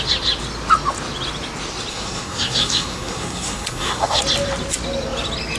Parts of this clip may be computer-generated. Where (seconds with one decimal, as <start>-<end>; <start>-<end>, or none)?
1.9-4.2